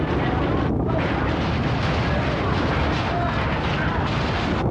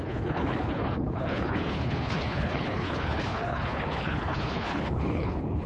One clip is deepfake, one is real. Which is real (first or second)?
first